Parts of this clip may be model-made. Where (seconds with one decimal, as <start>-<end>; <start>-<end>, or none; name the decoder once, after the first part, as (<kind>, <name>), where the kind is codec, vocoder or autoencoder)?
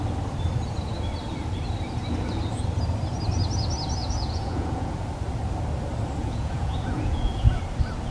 4.0-4.9 (vocoder, Vocos); 6.2-7.6